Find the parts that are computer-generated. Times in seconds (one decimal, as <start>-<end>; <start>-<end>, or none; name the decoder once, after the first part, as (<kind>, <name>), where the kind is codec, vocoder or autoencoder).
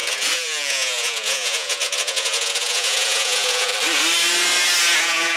0.0-3.7 (vocoder, Vocos); 5.0-5.4